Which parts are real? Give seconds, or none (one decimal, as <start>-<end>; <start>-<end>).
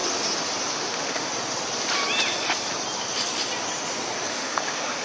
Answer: 0.0-0.7; 1.3-4.3